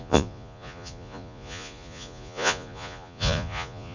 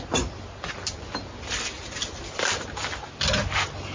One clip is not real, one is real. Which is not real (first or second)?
first